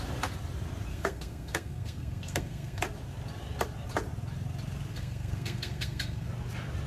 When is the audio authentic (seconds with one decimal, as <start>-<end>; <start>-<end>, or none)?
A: 0.0-0.9; 2.8-4.9; 6.3-6.9